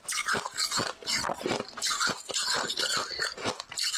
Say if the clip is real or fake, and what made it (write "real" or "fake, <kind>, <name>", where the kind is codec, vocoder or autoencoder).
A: fake, vocoder, BigVGAN v2